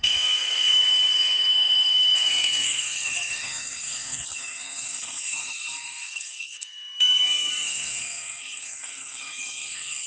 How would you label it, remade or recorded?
remade